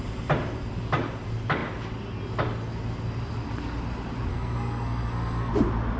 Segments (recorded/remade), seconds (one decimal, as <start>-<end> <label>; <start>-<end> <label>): 0.0-4.3 recorded; 4.3-5.5 remade; 5.5-6.0 recorded